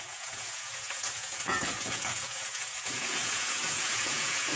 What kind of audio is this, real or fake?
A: fake